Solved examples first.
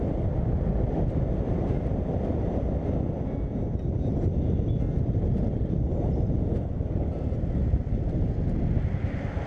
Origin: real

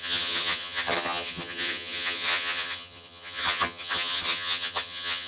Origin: fake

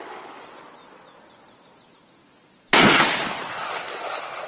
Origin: real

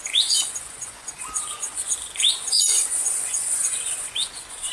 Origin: fake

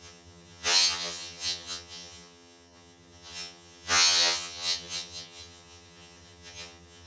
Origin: fake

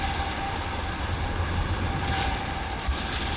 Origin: real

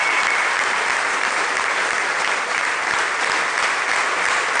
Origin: real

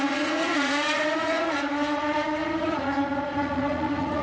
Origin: fake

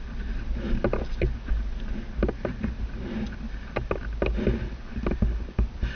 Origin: real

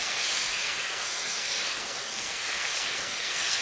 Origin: fake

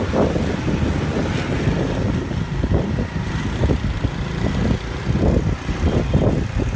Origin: real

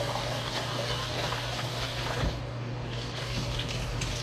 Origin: fake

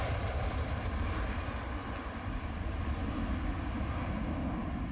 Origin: fake